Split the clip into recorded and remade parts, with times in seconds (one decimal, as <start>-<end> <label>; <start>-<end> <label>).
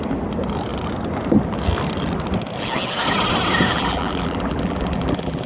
0.0-3.7 recorded; 3.7-5.5 remade